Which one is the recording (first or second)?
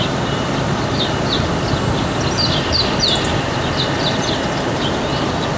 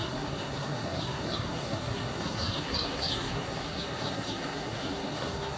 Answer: first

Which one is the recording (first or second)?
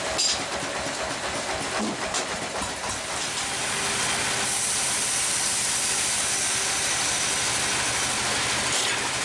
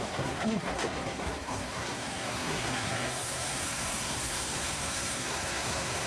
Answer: first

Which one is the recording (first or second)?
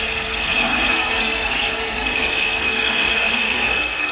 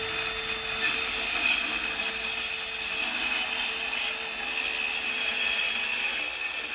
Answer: second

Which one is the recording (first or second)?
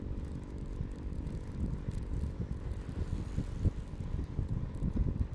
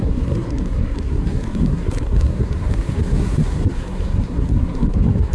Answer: first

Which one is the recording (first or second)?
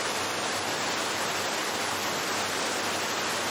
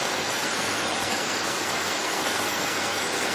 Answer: first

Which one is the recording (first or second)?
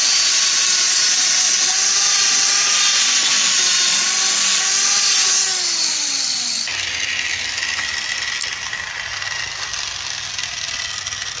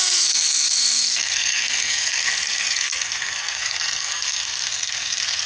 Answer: first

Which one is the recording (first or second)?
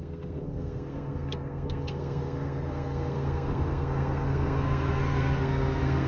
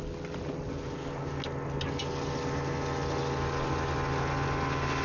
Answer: second